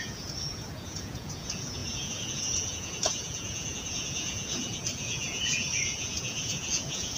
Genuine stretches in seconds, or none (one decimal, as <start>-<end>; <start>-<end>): none

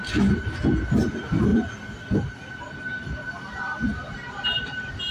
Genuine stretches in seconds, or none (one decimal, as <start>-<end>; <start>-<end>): 0.0-5.1

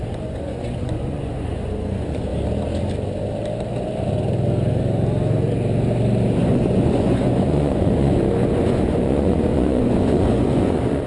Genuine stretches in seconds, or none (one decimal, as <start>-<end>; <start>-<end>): 2.3-6.4